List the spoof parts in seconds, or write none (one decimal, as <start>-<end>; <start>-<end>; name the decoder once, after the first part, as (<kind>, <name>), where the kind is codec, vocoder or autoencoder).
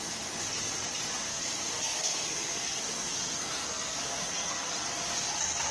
1.3-4.7 (codec, SNAC)